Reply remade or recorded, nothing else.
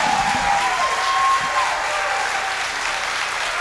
recorded